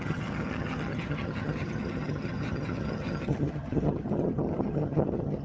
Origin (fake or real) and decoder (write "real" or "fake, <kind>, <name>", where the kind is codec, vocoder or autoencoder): fake, vocoder, HiFi-GAN